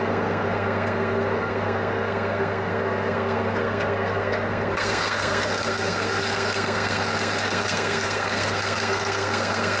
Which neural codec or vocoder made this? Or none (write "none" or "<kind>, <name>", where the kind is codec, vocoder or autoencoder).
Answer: codec, SNAC